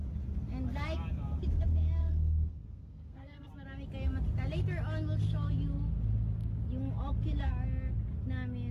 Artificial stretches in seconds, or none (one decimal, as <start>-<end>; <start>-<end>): 2.0-3.5

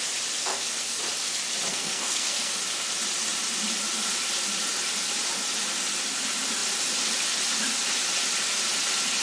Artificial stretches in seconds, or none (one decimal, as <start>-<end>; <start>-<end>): 0.4-1.0; 1.7-2.6

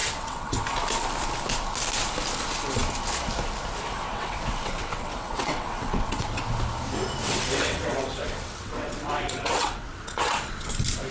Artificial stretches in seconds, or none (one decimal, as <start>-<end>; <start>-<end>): 0.0-0.6; 4.1-6.4; 7.2-10.7

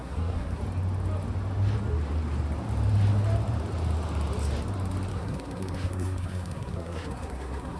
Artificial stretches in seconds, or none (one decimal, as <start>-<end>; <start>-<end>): 0.0-0.6; 5.1-7.8

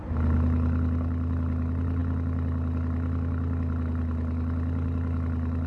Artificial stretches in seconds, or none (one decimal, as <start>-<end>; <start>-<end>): none

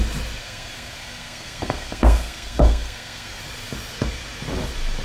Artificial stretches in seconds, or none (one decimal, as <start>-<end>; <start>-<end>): 0.4-3.4

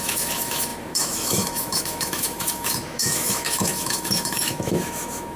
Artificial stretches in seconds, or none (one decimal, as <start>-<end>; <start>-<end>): 0.0-5.4

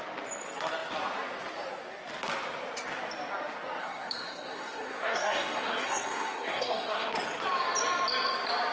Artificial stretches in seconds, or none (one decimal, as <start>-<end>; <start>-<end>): 3.8-7.1